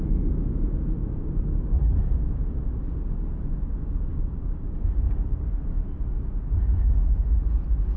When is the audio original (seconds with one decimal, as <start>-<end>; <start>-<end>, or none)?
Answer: 0.0-1.0; 1.8-4.1; 5.5-8.0